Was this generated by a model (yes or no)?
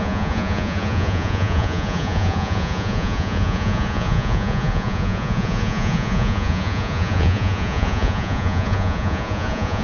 yes